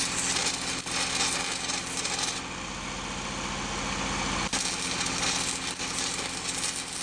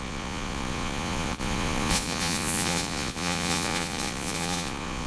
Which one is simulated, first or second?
second